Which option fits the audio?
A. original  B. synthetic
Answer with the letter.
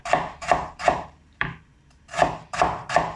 B